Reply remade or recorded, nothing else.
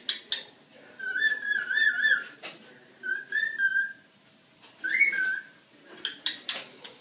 recorded